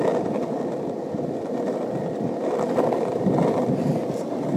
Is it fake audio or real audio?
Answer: real